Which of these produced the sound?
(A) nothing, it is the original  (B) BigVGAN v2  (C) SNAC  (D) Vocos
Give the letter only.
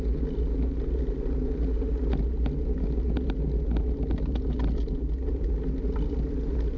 A